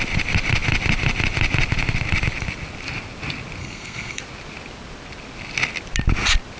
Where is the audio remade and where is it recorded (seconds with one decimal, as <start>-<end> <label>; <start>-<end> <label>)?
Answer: 0.0-3.6 recorded; 3.6-4.2 remade; 4.2-6.6 recorded